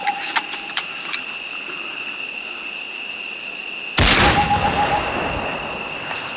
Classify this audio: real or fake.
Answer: real